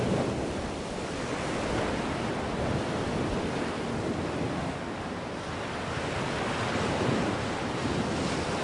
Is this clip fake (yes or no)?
no